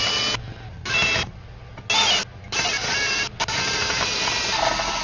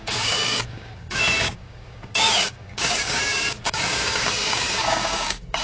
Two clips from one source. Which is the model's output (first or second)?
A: second